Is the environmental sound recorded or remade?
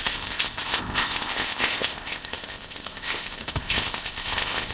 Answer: remade